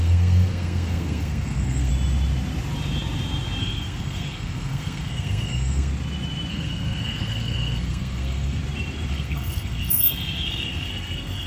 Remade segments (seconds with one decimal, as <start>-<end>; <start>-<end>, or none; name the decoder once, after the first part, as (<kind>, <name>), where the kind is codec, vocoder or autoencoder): 0.0-1.9 (codec, SNAC); 3.6-5.9; 6.5-8.6; 9.1-11.5